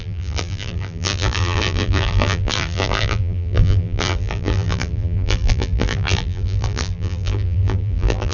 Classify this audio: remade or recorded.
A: remade